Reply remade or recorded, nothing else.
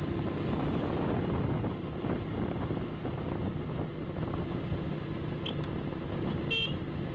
recorded